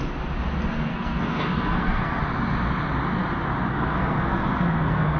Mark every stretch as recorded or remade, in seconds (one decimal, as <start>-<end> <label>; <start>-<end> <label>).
0.0-0.9 recorded; 0.9-2.2 remade; 2.2-3.7 recorded; 3.7-5.2 remade